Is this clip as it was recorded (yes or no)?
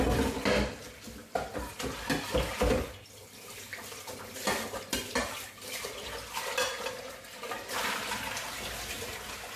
yes